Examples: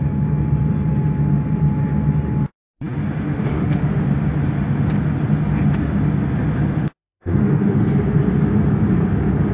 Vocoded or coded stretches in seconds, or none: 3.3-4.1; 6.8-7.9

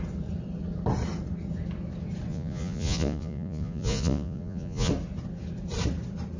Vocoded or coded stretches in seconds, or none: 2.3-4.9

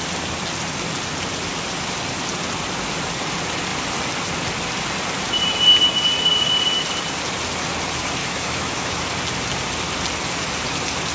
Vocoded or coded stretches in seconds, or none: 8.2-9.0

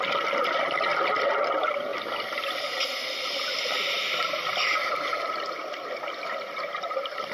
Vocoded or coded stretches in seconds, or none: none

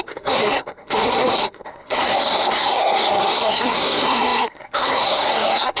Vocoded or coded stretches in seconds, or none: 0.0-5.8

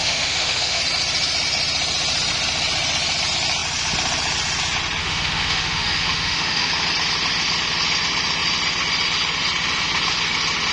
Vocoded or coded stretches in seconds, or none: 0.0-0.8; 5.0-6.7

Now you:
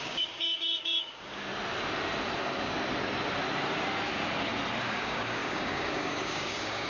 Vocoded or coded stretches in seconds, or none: 0.0-1.5; 4.8-6.9

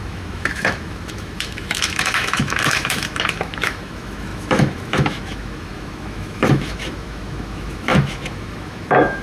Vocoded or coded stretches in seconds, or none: 0.0-9.2